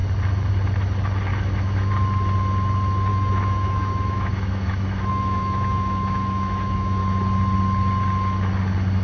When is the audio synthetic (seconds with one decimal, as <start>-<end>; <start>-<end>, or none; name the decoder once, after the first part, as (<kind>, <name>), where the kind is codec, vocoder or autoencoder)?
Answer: 1.3-1.9 (autoencoder, DAC-VAE); 3.1-7.0